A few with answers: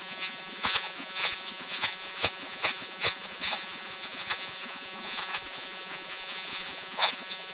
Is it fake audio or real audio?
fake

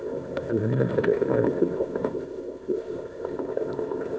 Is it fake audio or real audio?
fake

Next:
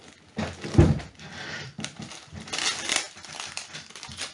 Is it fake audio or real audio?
real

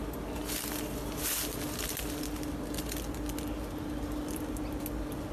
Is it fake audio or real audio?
real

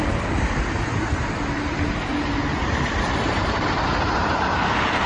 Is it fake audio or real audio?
fake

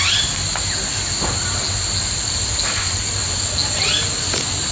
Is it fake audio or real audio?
real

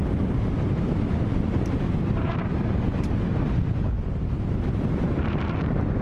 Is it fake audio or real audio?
real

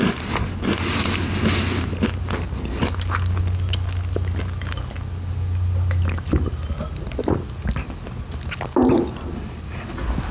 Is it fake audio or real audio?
real